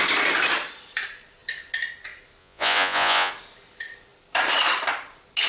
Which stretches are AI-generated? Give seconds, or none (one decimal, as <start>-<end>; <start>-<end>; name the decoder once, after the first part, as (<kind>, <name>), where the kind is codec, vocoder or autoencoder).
2.4-3.3 (vocoder, Vocos)